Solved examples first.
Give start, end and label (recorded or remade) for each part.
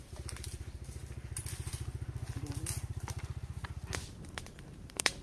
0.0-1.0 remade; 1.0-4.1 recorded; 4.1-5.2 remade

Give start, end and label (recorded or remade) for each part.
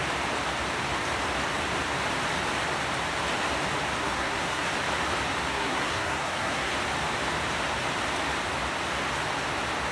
0.0-4.0 recorded; 4.0-4.7 remade; 4.7-5.5 recorded; 5.5-6.7 remade; 6.7-9.9 recorded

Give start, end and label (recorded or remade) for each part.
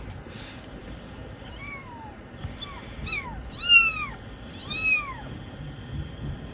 0.0-0.8 recorded; 0.8-4.7 remade; 4.7-6.5 recorded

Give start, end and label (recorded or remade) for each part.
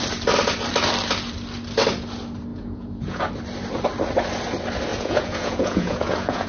0.0-2.5 recorded; 2.5-3.3 remade; 3.3-4.9 recorded; 4.9-6.5 remade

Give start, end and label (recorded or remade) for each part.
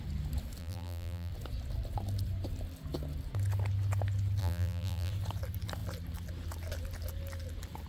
0.0-0.6 recorded; 0.6-1.3 remade; 1.3-4.4 recorded; 4.4-5.1 remade; 5.1-7.9 recorded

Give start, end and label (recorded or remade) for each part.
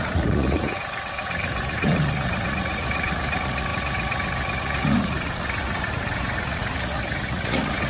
0.0-7.9 remade